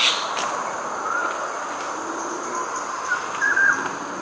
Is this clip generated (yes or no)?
no